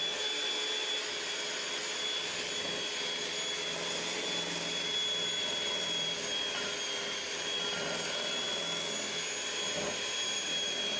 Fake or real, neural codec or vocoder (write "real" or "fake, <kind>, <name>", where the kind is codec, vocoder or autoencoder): real